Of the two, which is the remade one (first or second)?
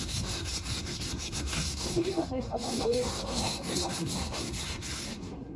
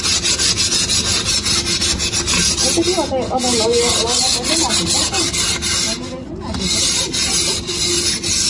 first